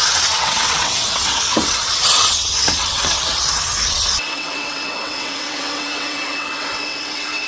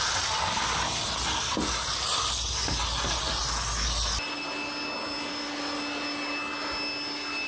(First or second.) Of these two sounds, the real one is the second